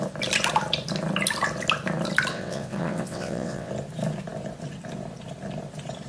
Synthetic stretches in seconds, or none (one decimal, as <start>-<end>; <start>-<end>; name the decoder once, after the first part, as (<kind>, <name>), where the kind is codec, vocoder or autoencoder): 2.3-3.7 (vocoder, WaveNeXt)